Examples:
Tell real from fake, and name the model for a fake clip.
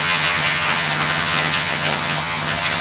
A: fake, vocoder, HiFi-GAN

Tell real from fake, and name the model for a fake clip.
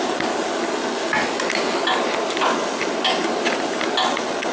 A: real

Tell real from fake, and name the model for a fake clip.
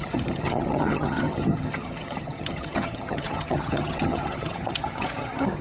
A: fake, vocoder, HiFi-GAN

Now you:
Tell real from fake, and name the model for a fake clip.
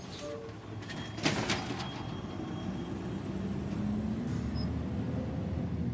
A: real